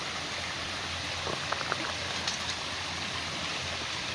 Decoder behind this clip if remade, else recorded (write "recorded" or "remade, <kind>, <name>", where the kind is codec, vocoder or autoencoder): recorded